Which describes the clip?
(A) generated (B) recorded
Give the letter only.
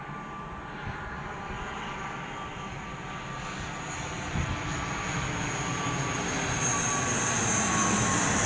B